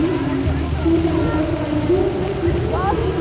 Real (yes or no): yes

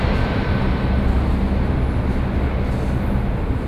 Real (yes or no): yes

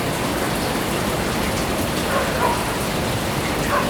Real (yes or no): yes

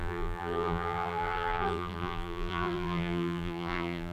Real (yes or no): no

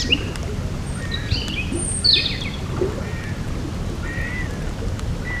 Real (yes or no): yes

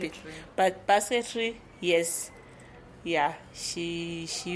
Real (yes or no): yes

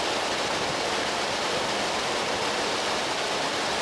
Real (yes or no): yes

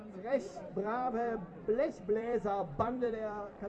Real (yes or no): no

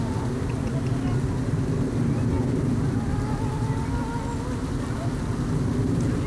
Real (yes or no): yes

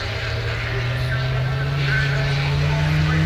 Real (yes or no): yes